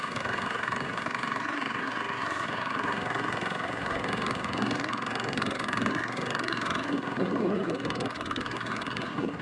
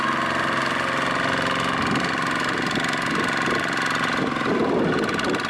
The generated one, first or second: first